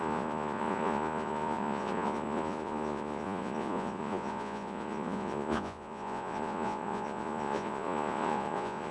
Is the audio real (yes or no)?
no